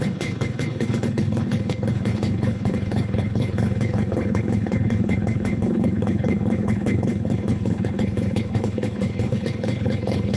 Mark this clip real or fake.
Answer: fake